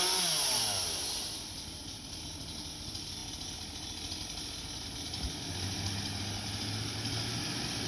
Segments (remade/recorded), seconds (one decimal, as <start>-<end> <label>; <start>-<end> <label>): 0.0-7.9 recorded